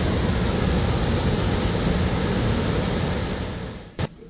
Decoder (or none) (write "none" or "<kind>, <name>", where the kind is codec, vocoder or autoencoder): none